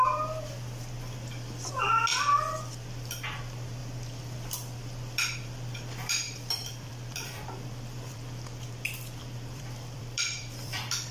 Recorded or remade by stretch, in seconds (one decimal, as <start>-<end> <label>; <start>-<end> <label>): 0.0-2.1 recorded; 2.1-3.4 remade; 3.4-3.8 recorded; 3.8-8.7 remade; 8.7-9.2 recorded; 9.2-11.1 remade